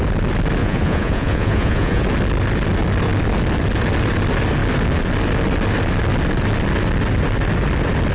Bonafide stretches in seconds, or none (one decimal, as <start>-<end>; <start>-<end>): 0.0-0.6; 2.0-8.1